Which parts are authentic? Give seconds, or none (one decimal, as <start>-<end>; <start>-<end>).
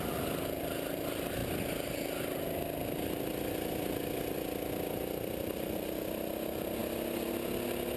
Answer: 0.0-8.0